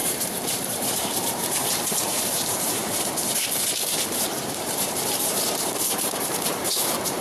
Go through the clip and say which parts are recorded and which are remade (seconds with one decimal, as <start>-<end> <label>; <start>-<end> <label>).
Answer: 0.0-2.8 remade; 2.8-4.1 recorded; 4.1-7.2 remade